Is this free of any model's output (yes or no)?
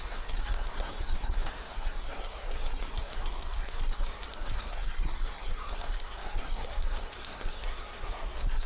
no